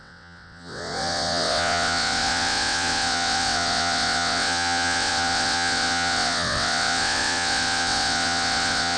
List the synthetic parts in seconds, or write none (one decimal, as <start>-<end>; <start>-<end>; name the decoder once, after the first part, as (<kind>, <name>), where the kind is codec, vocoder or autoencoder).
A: 0.0-9.0 (vocoder, WaveNeXt)